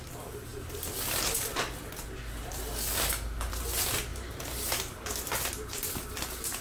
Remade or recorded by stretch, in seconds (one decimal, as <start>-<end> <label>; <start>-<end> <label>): 0.0-0.5 remade; 0.5-2.3 recorded; 2.3-6.6 remade